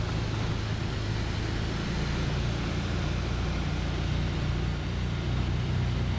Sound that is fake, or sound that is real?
real